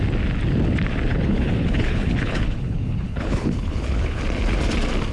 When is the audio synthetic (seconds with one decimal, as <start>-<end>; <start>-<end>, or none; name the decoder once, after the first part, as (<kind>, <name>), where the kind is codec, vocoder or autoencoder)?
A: 1.1-4.2 (codec, HILCodec)